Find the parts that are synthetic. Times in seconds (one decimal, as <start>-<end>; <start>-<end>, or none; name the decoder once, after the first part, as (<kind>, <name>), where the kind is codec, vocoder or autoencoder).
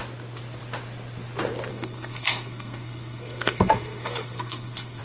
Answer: 1.7-5.0 (codec, SNAC)